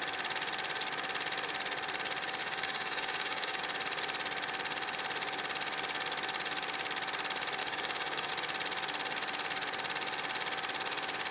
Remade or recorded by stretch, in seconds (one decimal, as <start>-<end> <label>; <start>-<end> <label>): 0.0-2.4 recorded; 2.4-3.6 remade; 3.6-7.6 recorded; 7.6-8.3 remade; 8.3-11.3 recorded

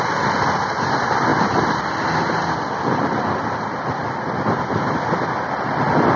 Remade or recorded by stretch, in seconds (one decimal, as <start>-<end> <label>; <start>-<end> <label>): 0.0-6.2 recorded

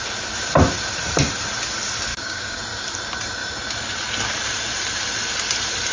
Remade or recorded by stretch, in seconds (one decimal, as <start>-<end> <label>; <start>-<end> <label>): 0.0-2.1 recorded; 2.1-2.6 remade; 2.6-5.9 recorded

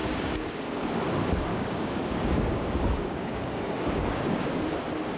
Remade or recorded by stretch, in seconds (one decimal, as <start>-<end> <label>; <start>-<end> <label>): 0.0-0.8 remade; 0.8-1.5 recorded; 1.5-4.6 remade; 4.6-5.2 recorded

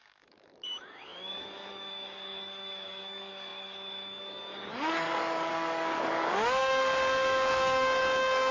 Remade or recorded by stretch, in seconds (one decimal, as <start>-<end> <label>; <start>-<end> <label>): 0.0-8.5 remade

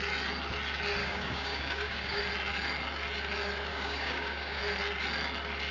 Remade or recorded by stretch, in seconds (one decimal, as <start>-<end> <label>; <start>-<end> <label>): 0.0-1.0 recorded; 1.0-2.2 remade; 2.2-3.7 recorded; 3.7-4.6 remade; 4.6-5.7 recorded